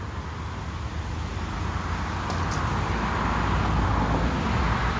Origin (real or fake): real